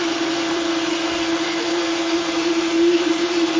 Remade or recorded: remade